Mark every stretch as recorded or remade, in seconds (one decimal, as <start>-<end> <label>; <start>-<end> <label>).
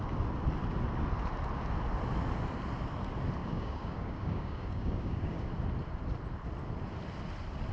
0.0-3.4 recorded; 3.4-5.5 remade; 5.5-7.7 recorded